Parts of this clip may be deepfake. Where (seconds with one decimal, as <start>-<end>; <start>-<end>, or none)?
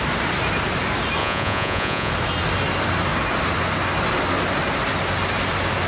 1.2-2.1